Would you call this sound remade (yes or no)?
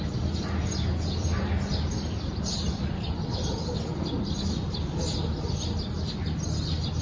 no